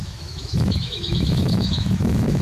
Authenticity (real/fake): fake